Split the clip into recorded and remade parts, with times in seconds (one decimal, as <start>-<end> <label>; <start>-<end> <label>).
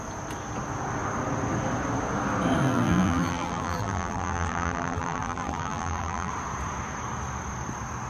0.0-2.6 recorded; 2.6-6.3 remade; 6.3-8.1 recorded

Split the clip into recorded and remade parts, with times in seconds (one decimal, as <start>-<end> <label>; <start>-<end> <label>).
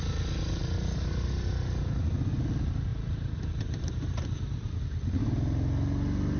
0.0-2.9 recorded; 2.9-4.8 remade; 4.8-6.4 recorded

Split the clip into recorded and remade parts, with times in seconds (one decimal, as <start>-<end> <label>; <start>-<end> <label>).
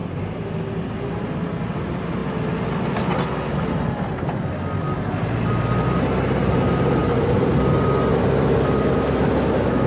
0.0-0.5 remade; 0.5-7.0 recorded; 7.0-7.5 remade; 7.5-9.9 recorded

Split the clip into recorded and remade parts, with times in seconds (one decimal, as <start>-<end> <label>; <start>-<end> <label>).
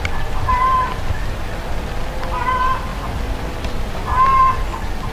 0.0-5.1 recorded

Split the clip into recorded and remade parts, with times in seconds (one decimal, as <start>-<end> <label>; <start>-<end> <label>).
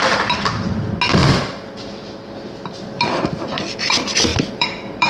0.0-1.2 recorded; 1.2-2.8 remade; 2.8-4.3 recorded; 4.3-5.1 remade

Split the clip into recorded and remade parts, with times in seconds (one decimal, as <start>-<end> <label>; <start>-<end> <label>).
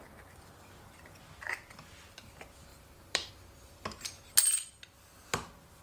0.0-2.7 recorded; 2.7-3.3 remade; 3.3-5.8 recorded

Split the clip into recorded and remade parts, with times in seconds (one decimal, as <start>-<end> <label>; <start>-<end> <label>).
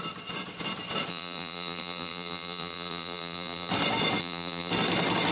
0.0-1.1 recorded; 1.1-3.7 remade; 3.7-4.2 recorded; 4.2-4.7 remade; 4.7-5.3 recorded